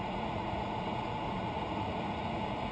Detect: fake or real fake